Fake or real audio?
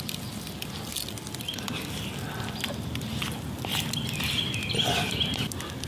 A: real